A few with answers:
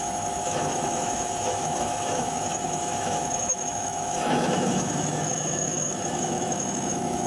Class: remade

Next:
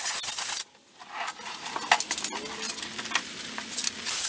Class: recorded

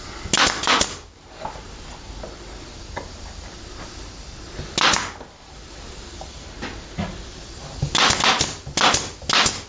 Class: recorded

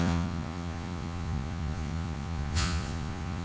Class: remade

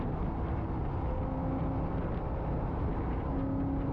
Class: recorded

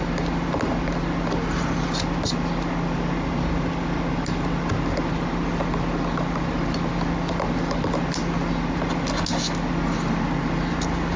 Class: recorded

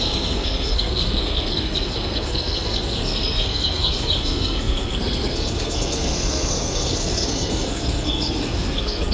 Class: remade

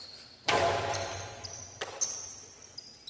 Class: recorded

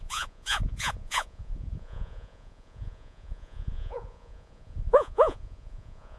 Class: remade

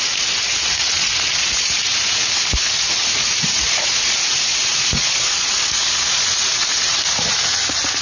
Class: remade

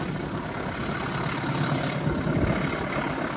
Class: recorded